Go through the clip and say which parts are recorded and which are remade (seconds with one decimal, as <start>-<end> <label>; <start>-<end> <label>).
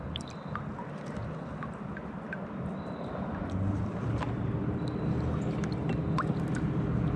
0.0-7.2 recorded